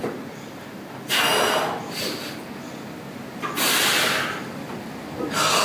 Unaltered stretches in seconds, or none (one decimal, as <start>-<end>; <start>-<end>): 0.6-5.6